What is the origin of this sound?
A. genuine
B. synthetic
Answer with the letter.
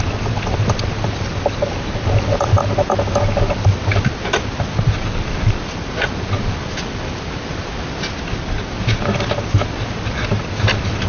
A